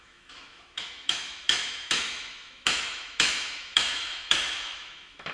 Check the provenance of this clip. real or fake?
fake